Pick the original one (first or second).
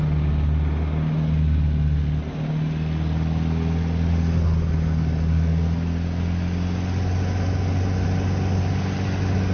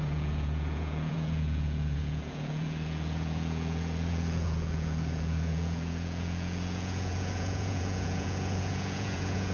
first